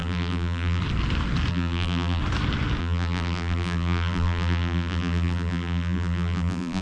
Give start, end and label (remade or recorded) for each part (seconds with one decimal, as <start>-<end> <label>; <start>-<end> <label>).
0.0-0.8 remade; 0.8-1.5 recorded; 1.5-2.2 remade; 2.2-2.8 recorded; 2.8-6.8 remade